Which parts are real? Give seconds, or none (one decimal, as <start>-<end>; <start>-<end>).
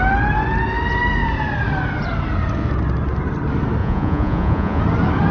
0.0-3.8; 4.8-5.3